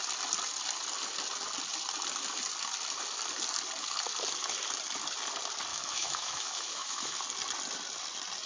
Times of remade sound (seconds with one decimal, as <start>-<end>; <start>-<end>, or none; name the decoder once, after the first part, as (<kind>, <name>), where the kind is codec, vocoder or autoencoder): 5.7-7.2 (autoencoder, DAC-VAE)